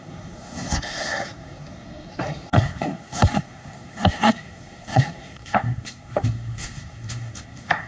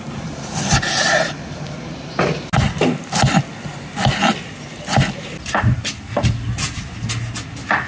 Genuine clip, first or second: second